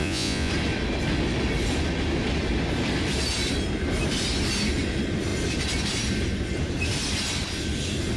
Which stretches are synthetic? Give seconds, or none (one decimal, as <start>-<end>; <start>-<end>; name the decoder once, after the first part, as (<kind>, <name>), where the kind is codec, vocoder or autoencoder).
0.0-0.5 (vocoder, Vocos)